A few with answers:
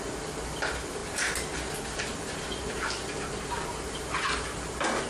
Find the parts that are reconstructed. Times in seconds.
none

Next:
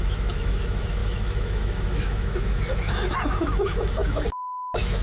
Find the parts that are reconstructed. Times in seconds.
0.0-5.0

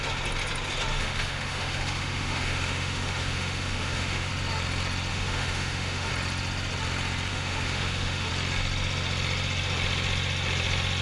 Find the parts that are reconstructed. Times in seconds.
0.9-4.3; 5.1-6.1; 7.3-8.3

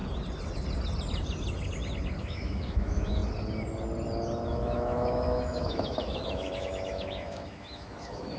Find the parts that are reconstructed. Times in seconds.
2.2-3.2; 4.5-8.4